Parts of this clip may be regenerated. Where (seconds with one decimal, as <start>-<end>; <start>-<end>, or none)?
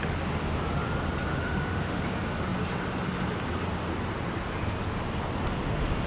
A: 1.3-2.0